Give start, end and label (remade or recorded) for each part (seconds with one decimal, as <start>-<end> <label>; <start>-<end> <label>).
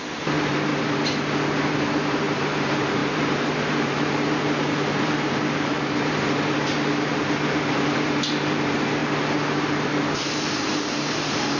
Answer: 0.0-0.7 remade; 0.7-1.7 recorded; 1.7-9.0 remade; 9.0-10.1 recorded; 10.1-11.6 remade